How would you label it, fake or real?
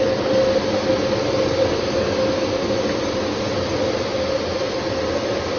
real